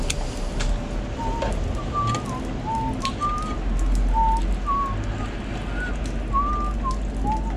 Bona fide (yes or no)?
yes